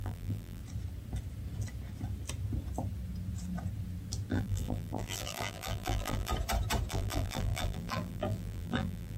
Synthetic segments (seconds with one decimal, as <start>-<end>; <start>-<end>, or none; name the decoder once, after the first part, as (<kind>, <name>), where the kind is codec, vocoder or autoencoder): 0.0-0.6 (vocoder, BigVGAN v2); 4.3-6.3; 6.9-9.2